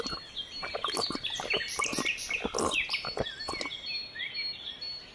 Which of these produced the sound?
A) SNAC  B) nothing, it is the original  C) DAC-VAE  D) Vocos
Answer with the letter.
B